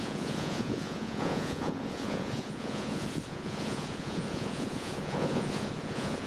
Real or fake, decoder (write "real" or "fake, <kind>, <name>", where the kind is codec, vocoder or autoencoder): fake, vocoder, Vocos